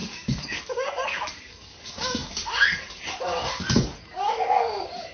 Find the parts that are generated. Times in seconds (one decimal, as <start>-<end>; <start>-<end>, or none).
0.0-5.1